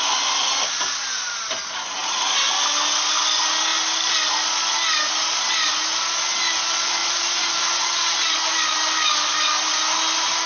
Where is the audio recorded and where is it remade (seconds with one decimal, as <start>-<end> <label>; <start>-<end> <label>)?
0.0-7.0 recorded; 7.0-8.4 remade; 8.4-10.5 recorded